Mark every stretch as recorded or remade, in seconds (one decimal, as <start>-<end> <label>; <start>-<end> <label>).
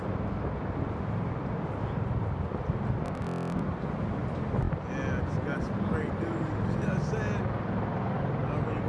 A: 0.0-8.9 recorded